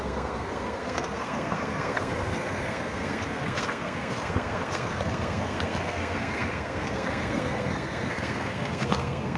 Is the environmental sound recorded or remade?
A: remade